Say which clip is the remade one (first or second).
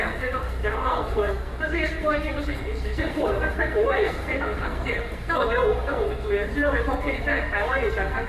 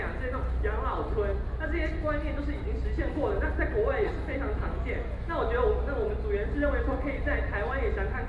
first